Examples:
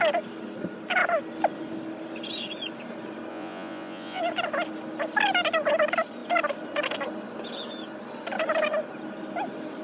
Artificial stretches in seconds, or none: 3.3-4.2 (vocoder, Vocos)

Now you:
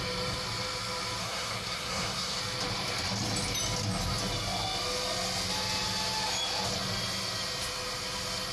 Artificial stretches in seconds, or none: 1.2-2.4 (codec, SNAC)

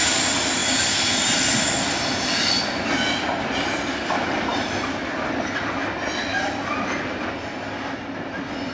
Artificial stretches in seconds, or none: none

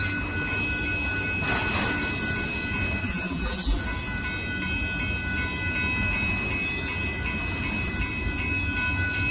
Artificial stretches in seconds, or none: 3.0-3.8 (vocoder, BigVGAN v2)

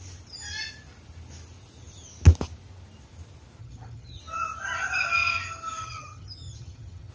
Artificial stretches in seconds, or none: 3.6-4.2 (vocoder, HiFi-GAN); 5.8-7.1